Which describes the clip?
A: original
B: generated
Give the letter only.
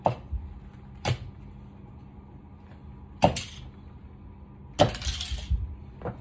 A